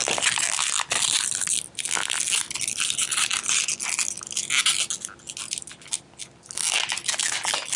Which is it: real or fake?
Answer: real